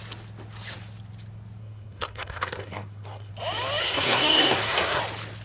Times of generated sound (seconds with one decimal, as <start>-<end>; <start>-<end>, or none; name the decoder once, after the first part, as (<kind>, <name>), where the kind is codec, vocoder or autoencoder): 1.6-3.3 (codec, SNAC); 3.8-5.0